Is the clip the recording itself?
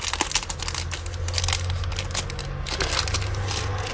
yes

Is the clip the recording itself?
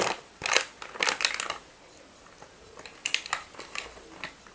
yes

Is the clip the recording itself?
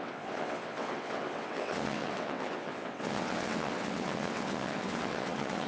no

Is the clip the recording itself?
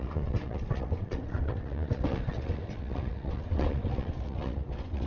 no